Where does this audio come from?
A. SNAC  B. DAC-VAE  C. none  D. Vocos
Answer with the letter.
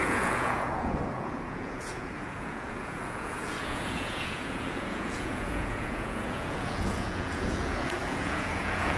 D